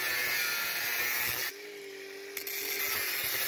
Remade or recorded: recorded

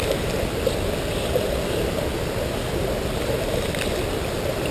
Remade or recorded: recorded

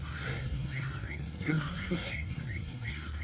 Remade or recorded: remade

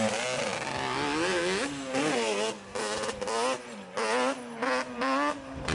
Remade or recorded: recorded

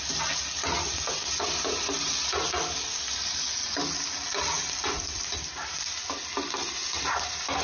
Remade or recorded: recorded